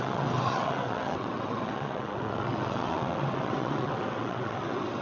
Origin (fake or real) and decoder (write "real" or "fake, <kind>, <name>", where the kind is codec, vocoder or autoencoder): fake, vocoder, WaveNeXt